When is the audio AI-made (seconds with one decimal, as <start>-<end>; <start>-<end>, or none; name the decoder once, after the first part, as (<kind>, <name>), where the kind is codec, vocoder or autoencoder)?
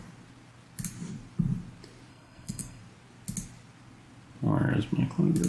2.1-2.8 (codec, SNAC)